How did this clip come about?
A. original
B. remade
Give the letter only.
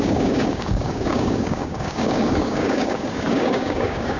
B